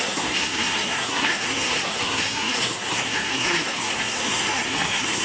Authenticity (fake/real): fake